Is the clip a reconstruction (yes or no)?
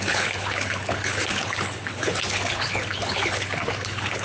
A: yes